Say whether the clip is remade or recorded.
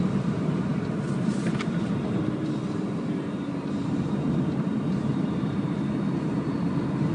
remade